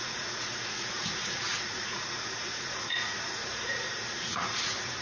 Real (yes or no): no